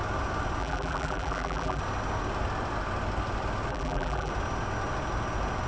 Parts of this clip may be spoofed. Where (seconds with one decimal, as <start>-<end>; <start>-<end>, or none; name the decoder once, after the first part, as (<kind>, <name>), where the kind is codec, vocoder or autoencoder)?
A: 0.6-1.8 (vocoder, BigVGAN v2); 3.7-4.3